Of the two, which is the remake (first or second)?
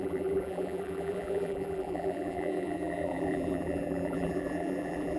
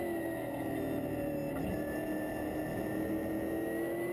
first